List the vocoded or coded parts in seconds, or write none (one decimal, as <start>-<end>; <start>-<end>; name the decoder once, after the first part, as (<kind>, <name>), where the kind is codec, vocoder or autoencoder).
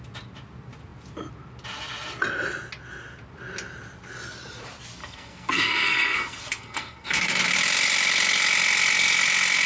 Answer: 5.0-7.4 (codec, SNAC)